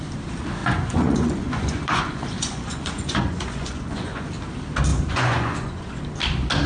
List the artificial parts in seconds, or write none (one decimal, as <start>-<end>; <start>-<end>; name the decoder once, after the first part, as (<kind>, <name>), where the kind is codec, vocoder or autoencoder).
0.6-4.3 (vocoder, Vocos); 4.9-6.0